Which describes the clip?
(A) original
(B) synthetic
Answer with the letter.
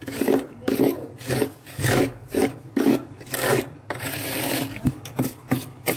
B